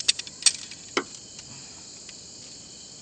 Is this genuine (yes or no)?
yes